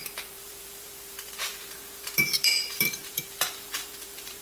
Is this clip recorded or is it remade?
remade